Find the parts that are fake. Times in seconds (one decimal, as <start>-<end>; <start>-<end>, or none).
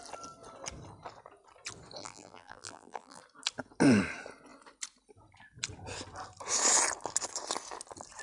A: 2.0-3.2